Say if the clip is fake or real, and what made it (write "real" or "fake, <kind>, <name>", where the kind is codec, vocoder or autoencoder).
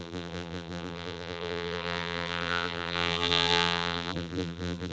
fake, vocoder, BigVGAN v2